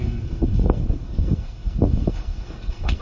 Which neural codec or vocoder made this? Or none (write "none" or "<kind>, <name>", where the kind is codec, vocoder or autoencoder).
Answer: codec, SNAC